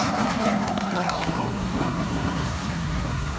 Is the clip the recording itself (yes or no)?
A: no